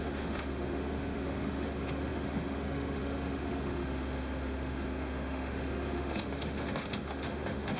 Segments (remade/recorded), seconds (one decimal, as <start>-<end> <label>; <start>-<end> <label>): 0.0-7.8 remade